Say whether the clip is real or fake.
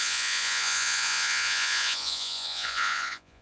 fake